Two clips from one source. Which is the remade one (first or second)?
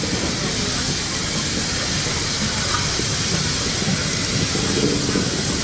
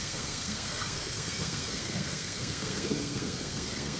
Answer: second